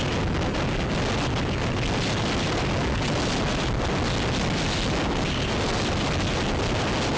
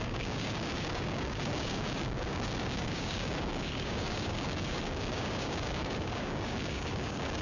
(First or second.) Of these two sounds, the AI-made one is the second